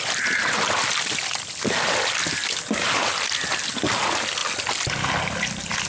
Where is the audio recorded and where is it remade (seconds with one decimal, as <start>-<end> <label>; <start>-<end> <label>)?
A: 0.0-5.9 recorded